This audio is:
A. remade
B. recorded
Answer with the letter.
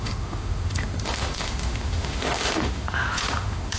A